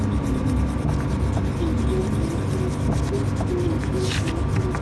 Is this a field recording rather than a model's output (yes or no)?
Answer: yes